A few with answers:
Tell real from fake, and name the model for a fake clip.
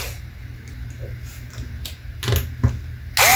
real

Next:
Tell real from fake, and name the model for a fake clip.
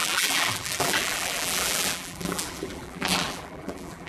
fake, vocoder, BigVGAN v2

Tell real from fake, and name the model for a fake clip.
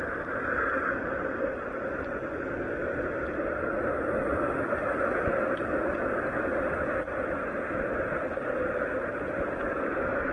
real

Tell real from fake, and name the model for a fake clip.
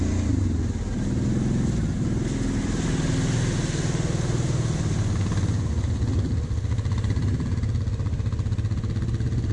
real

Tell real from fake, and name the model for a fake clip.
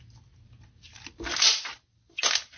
real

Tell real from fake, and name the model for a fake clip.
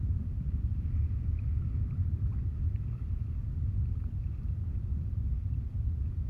fake, vocoder, BigVGAN v2